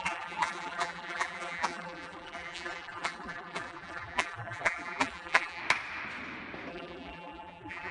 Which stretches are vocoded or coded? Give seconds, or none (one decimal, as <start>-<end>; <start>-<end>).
0.0-5.6; 6.7-7.9